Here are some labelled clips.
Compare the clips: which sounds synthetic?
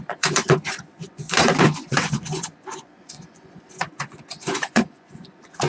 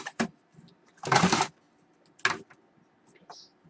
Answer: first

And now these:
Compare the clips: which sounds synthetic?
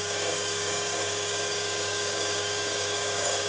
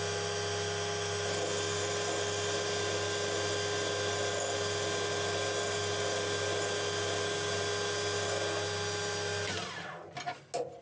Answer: first